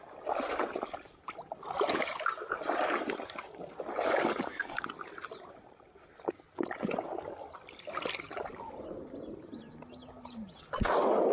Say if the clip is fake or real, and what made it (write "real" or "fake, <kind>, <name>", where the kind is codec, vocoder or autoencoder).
real